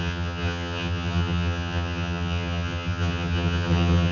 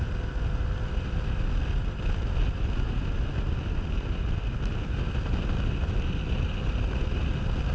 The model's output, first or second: first